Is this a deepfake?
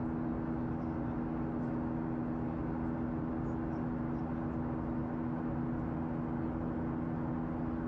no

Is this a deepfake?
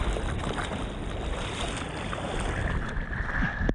no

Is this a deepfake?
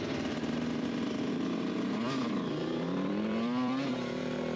yes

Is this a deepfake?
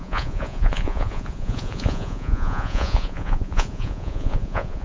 yes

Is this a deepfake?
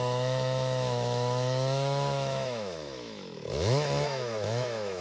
yes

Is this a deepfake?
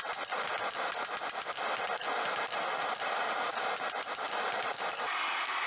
no